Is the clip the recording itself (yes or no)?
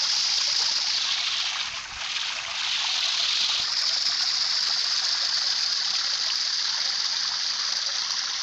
yes